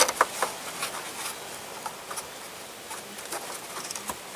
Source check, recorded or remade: recorded